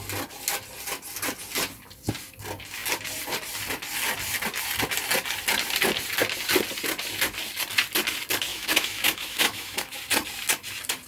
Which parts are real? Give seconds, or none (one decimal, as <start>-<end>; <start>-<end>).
0.0-8.5; 10.0-11.1